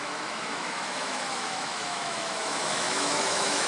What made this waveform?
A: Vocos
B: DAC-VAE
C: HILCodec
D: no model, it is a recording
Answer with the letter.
B